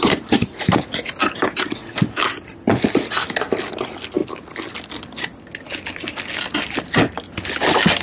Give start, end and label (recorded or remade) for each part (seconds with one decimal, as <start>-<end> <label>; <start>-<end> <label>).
0.0-8.0 recorded